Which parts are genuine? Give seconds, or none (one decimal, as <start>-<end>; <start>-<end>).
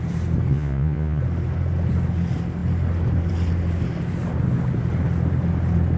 0.0-0.5; 1.2-6.0